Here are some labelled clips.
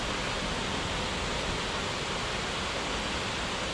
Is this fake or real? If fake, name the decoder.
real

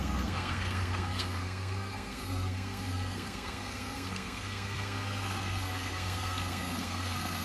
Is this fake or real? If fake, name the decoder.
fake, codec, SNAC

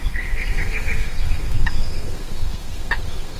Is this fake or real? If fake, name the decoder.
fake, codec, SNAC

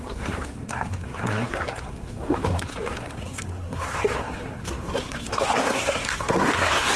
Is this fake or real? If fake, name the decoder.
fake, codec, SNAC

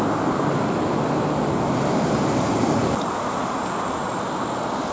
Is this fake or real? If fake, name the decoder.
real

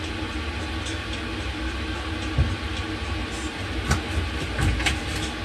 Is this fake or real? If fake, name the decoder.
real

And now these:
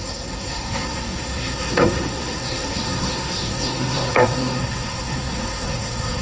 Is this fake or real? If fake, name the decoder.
fake, codec, SNAC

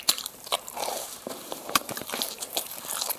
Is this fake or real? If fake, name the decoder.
fake, vocoder, BigVGAN v2